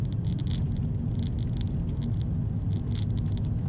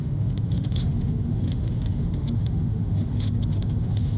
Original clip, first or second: first